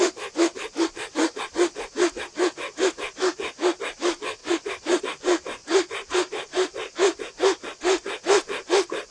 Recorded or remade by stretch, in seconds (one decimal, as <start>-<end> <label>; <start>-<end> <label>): 0.0-4.4 recorded; 4.4-5.0 remade; 5.0-5.6 recorded; 5.6-7.2 remade; 7.2-9.1 recorded